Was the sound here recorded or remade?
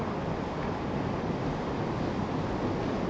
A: recorded